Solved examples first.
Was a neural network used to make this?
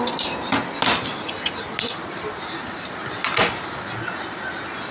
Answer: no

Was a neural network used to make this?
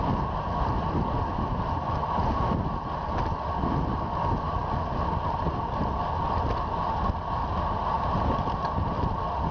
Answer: no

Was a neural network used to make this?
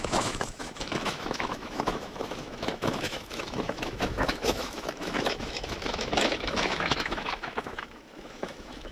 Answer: yes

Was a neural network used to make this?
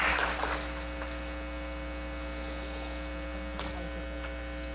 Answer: no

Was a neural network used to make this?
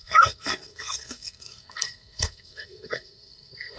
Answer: yes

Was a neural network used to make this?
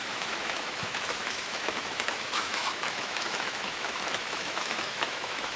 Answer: yes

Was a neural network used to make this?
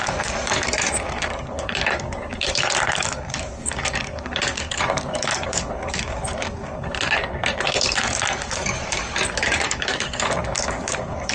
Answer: yes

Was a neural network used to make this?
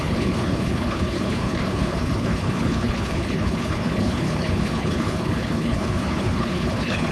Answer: yes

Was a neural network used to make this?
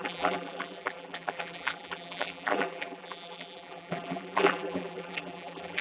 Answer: yes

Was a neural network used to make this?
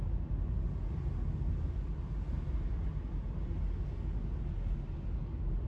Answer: no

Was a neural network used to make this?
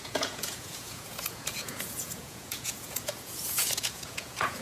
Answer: yes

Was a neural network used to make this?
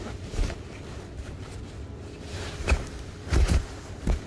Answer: no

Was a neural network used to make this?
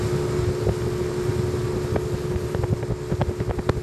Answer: no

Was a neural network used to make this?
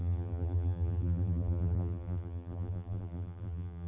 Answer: yes